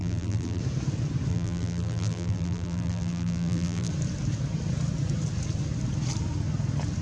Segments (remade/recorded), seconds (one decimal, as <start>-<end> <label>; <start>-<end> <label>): 0.0-0.6 remade; 0.6-1.3 recorded; 1.3-3.9 remade; 3.9-7.0 recorded